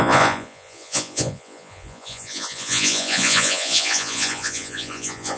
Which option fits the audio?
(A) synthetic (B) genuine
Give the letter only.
A